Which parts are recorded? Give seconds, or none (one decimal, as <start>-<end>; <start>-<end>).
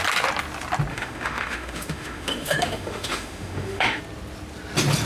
0.0-0.9; 4.0-5.1